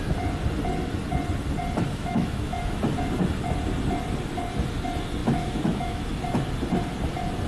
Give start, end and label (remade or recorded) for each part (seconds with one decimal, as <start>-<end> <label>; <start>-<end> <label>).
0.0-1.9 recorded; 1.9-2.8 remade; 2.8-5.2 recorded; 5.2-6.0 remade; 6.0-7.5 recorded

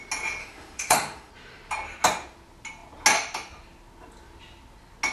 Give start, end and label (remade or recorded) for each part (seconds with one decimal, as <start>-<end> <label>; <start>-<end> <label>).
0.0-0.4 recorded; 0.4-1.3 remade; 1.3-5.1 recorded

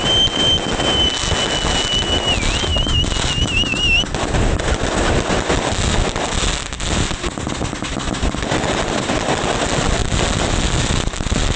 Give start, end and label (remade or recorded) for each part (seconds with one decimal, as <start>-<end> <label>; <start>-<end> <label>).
0.0-11.6 recorded